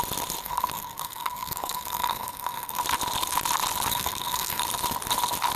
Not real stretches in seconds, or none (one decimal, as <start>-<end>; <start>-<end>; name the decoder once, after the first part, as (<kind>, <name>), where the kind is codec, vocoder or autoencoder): 0.4-2.8 (codec, SNAC); 3.9-4.6

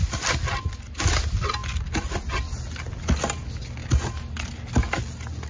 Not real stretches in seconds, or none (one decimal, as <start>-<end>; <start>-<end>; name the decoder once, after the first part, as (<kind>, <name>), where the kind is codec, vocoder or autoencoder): none

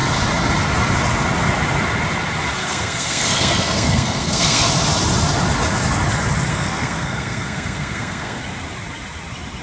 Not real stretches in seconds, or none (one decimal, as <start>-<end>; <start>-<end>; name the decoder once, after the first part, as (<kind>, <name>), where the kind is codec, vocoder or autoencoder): 2.6-4.7 (codec, SNAC); 6.5-8.4

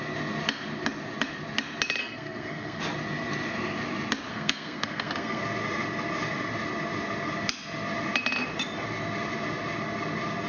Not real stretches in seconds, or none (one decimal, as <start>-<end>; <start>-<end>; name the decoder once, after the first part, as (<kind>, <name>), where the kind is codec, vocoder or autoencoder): 2.0-2.8 (codec, SNAC); 4.3-5.4